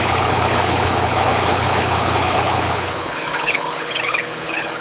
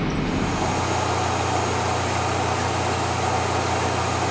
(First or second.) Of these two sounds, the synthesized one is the first